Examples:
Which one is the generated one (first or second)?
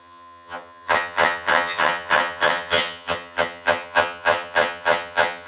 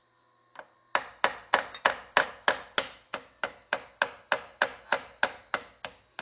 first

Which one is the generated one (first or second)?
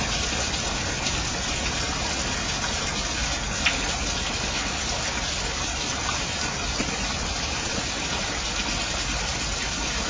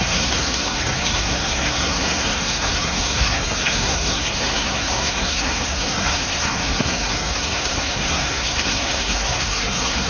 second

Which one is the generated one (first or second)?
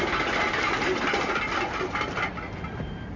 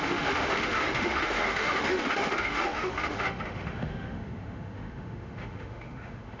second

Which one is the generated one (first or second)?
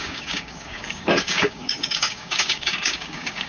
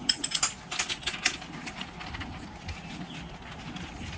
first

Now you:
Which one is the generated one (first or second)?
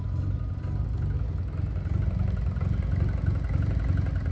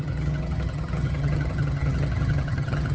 second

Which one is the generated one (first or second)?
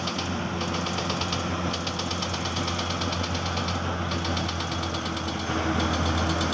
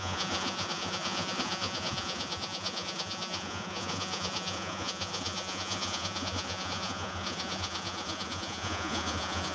second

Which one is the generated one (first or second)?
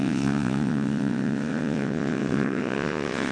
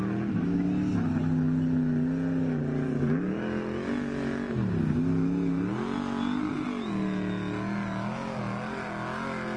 first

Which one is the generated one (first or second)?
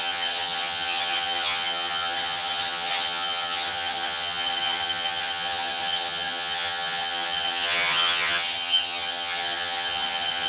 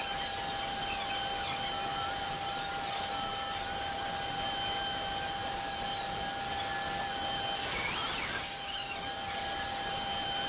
first